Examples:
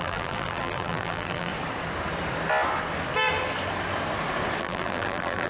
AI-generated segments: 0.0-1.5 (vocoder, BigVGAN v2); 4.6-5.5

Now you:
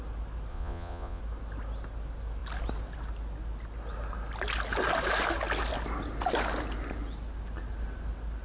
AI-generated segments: 0.5-1.2 (vocoder, Vocos)

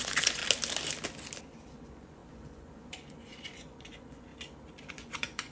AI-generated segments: 0.0-0.4 (vocoder, Vocos); 1.7-4.3; 4.9-5.5

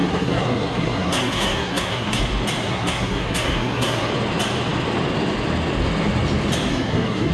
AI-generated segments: 0.0-2.2 (codec, SNAC); 2.6-4.1; 6.7-7.3

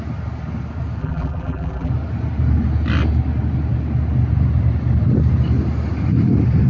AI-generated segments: 1.0-1.9 (vocoder, BigVGAN v2)